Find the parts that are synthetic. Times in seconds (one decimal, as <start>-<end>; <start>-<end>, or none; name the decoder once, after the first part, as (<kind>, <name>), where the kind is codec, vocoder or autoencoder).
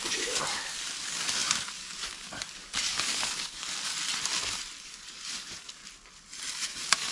0.0-3.9 (codec, DAC); 4.8-5.8; 6.5-7.1